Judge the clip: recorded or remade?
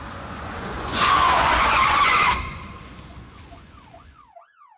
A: remade